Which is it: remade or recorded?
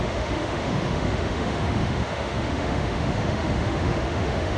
remade